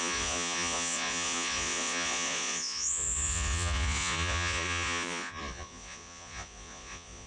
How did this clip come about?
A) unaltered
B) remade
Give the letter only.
B